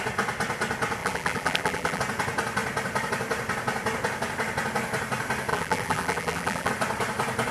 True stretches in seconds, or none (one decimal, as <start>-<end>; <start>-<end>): 0.0-1.0; 2.0-5.5; 6.7-7.5